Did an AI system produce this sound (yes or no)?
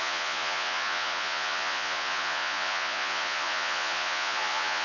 yes